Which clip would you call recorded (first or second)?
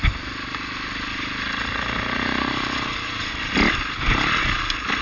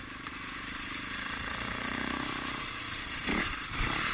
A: first